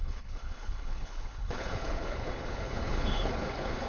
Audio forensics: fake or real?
fake